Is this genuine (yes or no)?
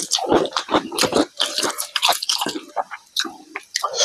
no